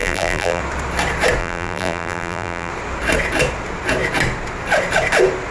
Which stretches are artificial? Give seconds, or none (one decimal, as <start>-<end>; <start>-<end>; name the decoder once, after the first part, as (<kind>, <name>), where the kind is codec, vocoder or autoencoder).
0.0-0.6 (vocoder, BigVGAN v2); 1.4-2.7